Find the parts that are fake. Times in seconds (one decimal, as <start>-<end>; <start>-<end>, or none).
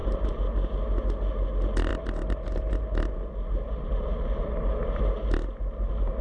none